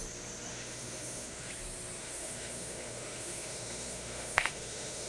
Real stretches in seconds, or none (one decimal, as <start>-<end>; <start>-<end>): 0.0-0.5; 1.5-2.0